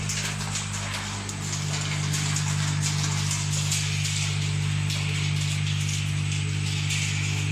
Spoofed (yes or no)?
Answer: no